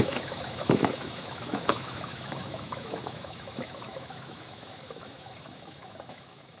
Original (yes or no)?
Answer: no